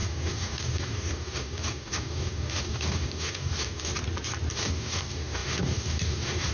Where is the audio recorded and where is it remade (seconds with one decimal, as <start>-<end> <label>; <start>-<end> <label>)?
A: 0.0-3.9 remade; 3.9-4.5 recorded; 4.5-6.5 remade